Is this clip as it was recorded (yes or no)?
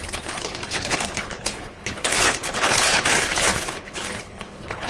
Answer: no